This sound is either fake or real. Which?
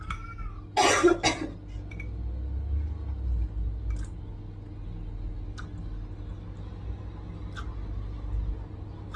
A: real